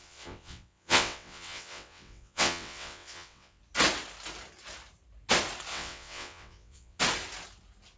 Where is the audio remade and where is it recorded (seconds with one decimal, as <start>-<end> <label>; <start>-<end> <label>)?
0.0-3.6 remade; 3.6-5.7 recorded; 5.7-7.0 remade; 7.0-8.0 recorded